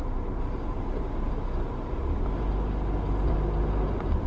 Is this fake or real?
real